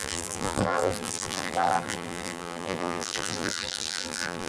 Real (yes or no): no